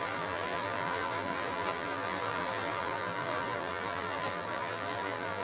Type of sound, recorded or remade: remade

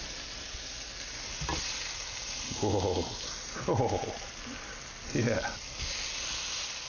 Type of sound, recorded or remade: recorded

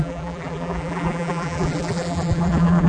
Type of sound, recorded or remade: remade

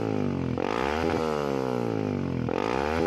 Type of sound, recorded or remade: recorded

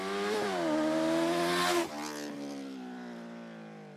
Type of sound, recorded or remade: recorded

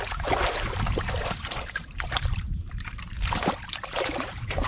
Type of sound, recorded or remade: remade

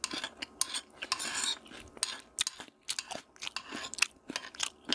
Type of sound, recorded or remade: recorded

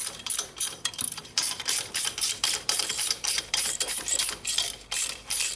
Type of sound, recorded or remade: remade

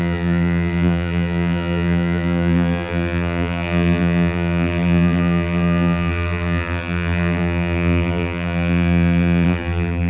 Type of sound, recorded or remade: remade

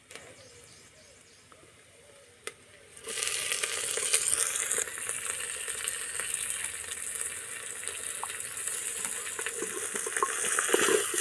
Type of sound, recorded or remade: recorded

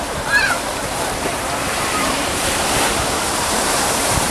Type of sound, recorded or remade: remade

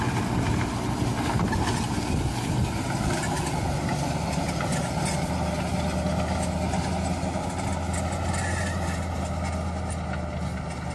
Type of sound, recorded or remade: recorded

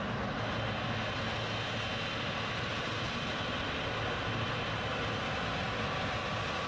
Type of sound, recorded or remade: recorded